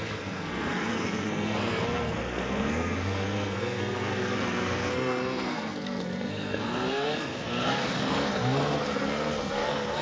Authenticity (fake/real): fake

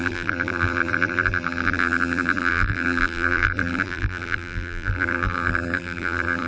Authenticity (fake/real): fake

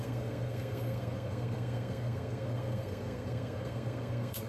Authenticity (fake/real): fake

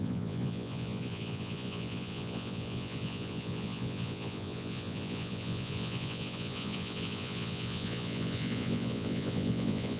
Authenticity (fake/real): fake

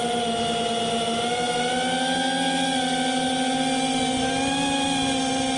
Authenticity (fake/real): real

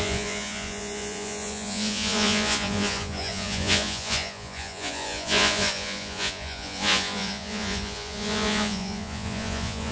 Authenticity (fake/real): fake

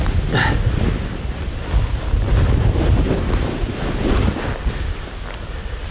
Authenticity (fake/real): real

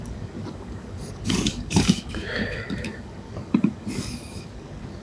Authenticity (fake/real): fake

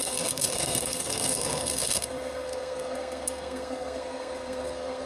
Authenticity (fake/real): fake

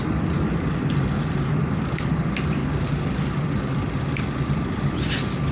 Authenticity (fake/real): fake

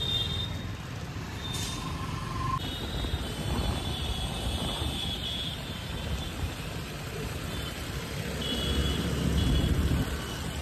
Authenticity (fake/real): real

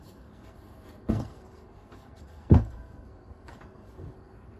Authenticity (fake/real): fake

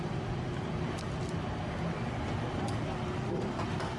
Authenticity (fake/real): real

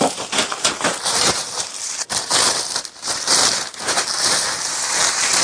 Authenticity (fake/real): fake